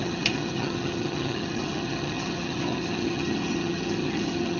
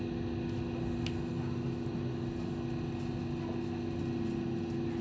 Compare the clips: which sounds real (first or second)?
second